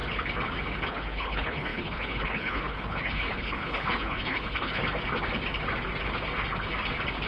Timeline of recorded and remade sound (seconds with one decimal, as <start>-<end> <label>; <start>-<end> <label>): 0.0-0.9 recorded; 0.9-4.8 remade; 4.8-7.3 recorded